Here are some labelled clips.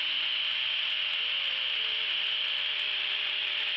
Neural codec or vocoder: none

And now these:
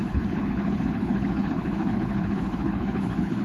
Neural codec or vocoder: codec, HILCodec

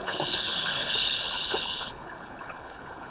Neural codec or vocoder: codec, HILCodec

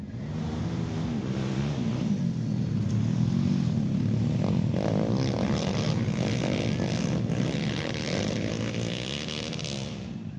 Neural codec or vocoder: none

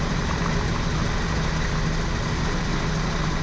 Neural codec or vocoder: none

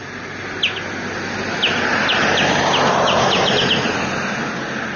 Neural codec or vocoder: none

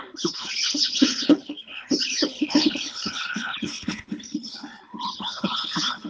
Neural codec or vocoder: codec, HILCodec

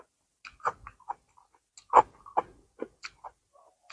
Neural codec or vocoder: none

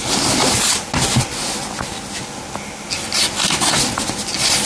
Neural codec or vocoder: none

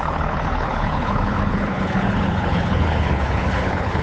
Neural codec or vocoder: codec, HILCodec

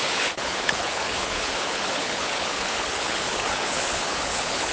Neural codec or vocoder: codec, HILCodec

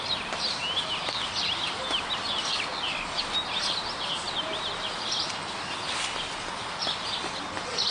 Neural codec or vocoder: none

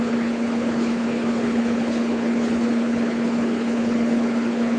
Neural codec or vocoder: codec, HILCodec